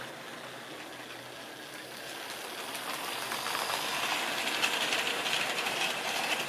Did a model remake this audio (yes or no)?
no